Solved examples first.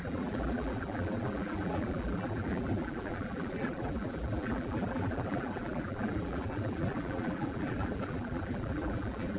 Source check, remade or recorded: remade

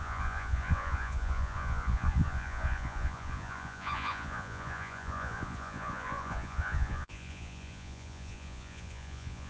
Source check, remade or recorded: remade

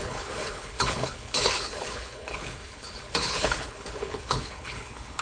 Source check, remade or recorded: remade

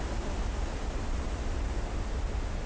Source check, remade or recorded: recorded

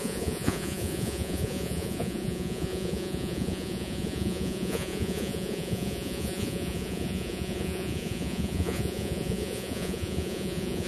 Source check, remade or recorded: remade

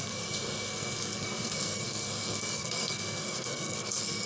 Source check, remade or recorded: remade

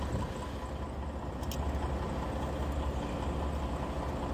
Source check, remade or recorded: recorded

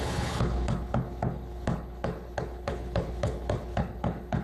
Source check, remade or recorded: remade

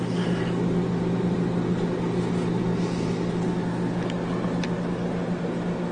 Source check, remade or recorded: recorded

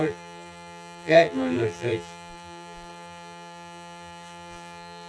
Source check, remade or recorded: remade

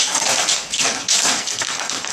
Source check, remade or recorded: remade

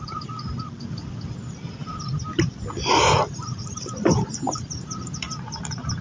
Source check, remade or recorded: recorded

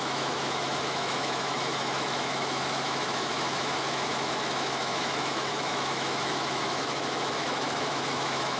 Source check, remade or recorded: remade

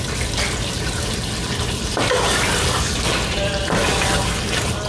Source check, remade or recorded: recorded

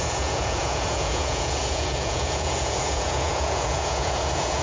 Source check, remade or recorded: remade